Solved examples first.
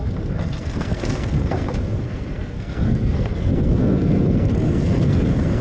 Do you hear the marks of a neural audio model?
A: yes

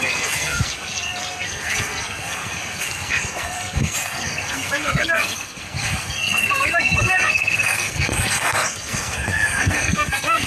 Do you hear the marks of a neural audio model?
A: yes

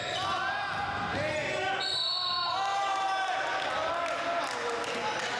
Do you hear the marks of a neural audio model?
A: no